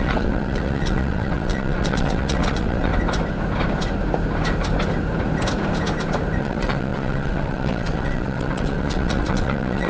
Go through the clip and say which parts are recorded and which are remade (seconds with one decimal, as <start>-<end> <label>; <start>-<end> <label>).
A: 0.0-2.9 remade; 2.9-6.4 recorded; 6.4-9.9 remade